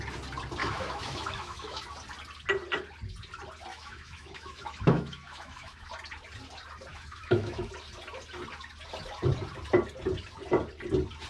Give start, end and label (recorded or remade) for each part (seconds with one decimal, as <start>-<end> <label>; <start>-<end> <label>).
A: 0.0-0.6 recorded; 0.6-1.8 remade; 1.8-3.7 recorded; 3.7-5.9 remade; 5.9-6.9 recorded; 6.9-7.7 remade; 7.7-11.3 recorded